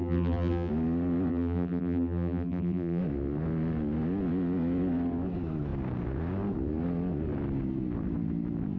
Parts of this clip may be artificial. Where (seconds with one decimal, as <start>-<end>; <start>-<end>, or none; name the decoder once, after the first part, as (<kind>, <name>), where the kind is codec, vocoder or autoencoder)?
0.0-0.7 (vocoder, BigVGAN v2); 1.3-3.0